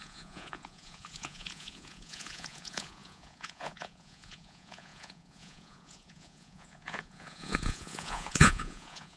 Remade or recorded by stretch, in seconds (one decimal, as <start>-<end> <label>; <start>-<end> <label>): 0.0-9.2 remade